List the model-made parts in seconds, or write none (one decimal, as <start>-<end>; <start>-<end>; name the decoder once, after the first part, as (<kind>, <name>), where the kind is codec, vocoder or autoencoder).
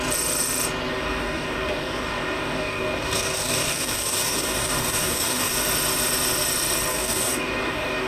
0.9-5.5 (codec, DAC); 6.9-8.1